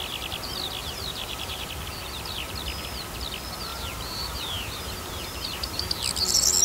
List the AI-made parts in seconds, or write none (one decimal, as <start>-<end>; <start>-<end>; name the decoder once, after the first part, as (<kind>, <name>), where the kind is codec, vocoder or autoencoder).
0.8-1.7 (vocoder, BigVGAN v2); 3.7-5.9